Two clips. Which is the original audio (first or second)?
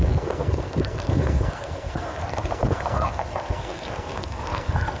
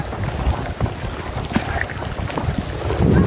second